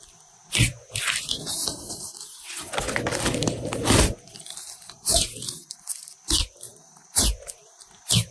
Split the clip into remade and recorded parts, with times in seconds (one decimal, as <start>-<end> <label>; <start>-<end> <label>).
0.0-8.3 recorded